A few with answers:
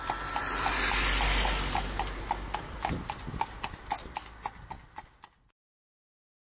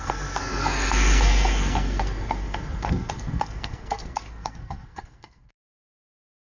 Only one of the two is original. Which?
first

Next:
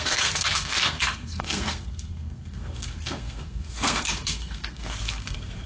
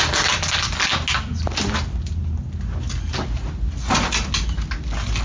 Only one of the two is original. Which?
second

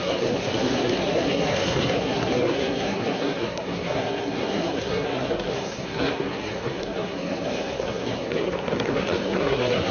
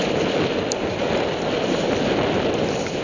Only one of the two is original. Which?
second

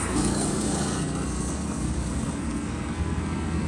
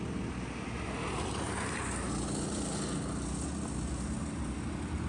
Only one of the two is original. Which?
second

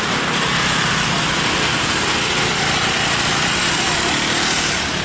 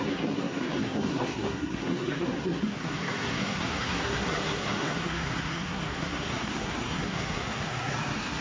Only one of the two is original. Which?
first